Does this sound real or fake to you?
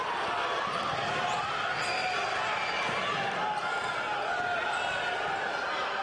real